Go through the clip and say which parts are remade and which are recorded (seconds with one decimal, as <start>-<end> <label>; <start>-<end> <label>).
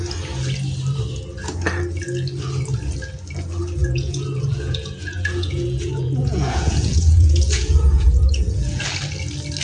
0.0-3.8 recorded; 3.8-8.8 remade; 8.8-9.6 recorded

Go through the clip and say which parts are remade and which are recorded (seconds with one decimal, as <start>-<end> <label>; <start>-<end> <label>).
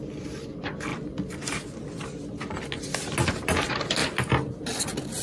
0.0-5.2 recorded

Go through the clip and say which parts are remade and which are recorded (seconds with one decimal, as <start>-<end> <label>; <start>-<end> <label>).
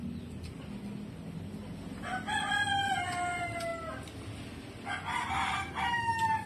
0.0-6.5 recorded